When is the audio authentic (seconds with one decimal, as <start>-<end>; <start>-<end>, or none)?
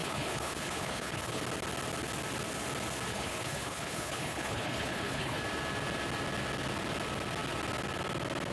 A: 1.4-3.1; 5.4-8.5